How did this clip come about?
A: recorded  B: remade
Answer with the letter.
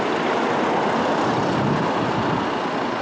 A